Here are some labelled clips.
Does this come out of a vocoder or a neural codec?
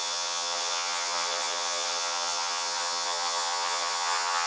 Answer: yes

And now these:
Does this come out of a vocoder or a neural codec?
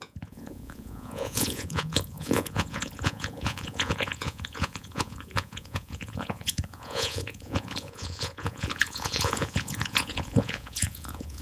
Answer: yes